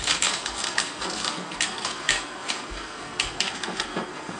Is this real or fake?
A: fake